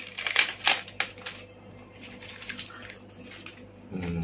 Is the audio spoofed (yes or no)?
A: no